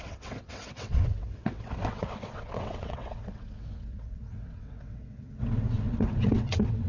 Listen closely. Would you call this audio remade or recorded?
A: remade